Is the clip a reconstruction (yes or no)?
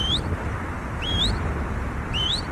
yes